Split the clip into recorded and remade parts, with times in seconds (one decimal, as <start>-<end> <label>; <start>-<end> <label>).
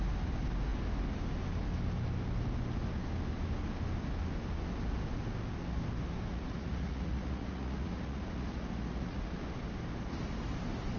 0.0-6.3 recorded; 6.3-9.4 remade; 9.4-11.0 recorded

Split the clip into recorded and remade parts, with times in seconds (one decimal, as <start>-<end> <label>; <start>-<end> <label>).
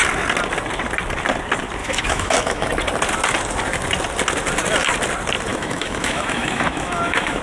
0.0-1.8 recorded; 1.8-2.7 remade; 2.7-5.5 recorded; 5.5-7.4 remade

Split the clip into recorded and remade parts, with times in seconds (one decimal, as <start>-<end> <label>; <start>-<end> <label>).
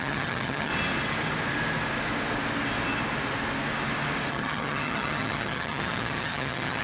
0.0-0.7 remade; 0.7-4.3 recorded; 4.3-6.8 remade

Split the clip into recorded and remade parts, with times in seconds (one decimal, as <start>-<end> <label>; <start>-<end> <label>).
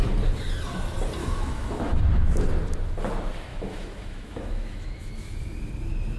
0.0-1.2 recorded; 1.2-2.0 remade; 2.0-3.5 recorded; 3.5-5.4 remade; 5.4-6.2 recorded